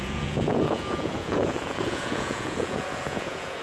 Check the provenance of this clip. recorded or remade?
remade